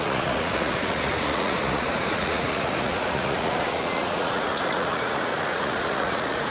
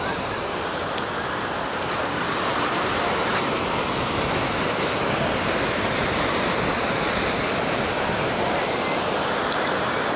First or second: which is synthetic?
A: first